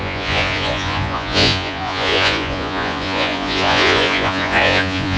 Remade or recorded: remade